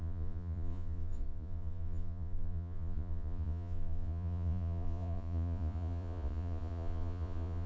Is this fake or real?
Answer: fake